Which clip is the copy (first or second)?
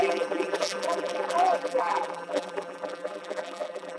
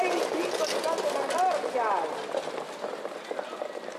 first